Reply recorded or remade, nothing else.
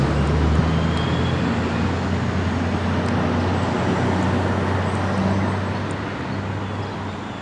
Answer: recorded